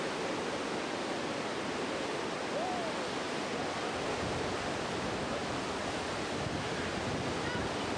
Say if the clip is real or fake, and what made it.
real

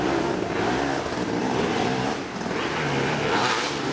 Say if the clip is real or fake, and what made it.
real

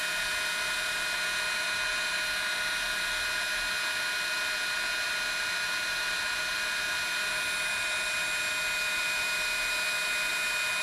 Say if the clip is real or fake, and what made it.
real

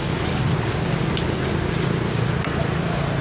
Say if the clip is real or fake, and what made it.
real